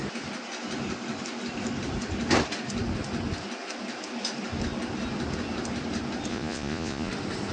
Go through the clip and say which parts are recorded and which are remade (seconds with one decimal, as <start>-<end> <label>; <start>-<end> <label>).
0.0-6.3 recorded; 6.3-7.1 remade; 7.1-7.5 recorded